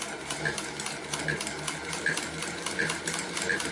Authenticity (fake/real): real